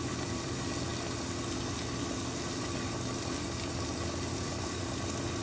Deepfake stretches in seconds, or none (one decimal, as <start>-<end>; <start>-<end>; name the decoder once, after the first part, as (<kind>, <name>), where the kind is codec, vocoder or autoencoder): 0.0-0.9 (vocoder, BigVGAN v2); 4.1-4.5